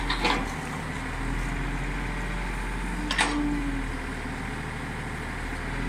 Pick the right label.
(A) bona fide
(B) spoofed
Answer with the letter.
A